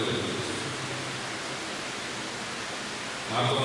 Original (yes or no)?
yes